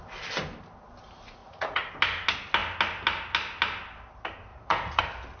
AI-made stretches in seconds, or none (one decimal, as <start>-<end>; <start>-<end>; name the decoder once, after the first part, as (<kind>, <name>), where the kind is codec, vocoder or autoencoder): 1.4-1.9 (vocoder, Vocos); 4.5-5.0